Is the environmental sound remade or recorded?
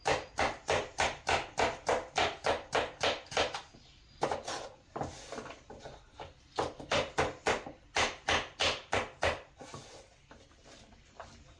remade